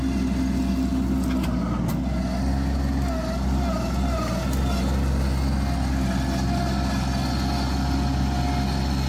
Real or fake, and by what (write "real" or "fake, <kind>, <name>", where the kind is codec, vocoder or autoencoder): real